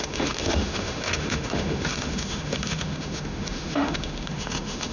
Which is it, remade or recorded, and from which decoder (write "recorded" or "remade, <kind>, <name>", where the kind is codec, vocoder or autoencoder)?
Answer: remade, autoencoder, DAC-VAE